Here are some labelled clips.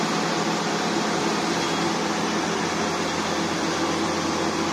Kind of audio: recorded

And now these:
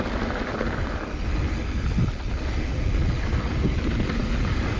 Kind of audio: recorded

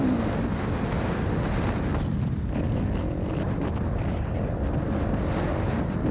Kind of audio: recorded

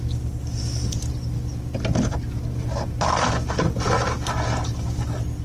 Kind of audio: recorded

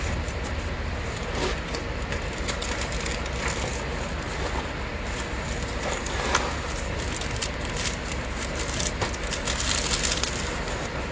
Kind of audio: remade